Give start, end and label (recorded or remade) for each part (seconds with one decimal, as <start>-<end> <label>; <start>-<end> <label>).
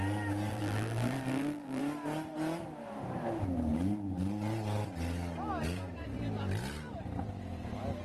0.0-0.5 recorded; 0.5-1.8 remade; 1.8-8.0 recorded